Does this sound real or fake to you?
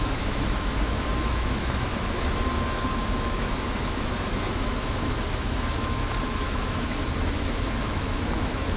fake